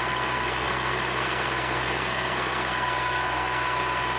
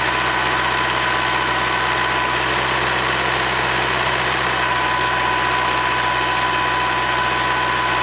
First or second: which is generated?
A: first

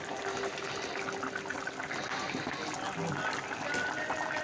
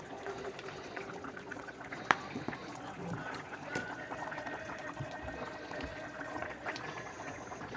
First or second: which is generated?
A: second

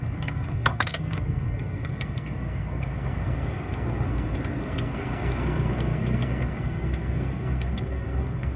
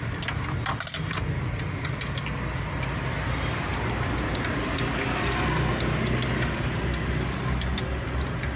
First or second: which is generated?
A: first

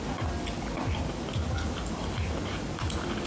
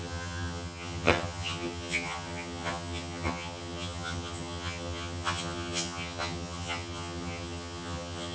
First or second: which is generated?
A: second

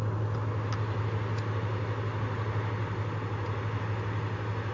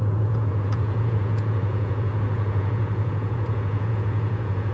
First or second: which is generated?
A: second